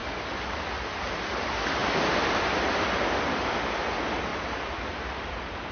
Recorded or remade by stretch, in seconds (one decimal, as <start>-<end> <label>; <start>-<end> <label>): 0.0-1.8 recorded; 1.8-3.6 remade; 3.6-4.3 recorded; 4.3-5.7 remade